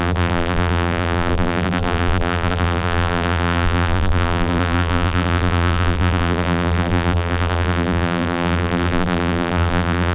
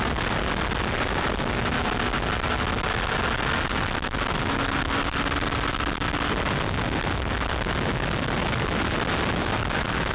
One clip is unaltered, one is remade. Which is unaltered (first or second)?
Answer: second